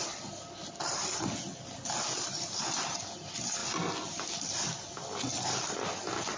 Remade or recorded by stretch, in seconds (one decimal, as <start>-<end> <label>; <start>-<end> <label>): 0.0-6.4 recorded